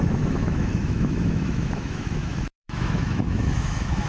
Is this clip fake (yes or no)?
yes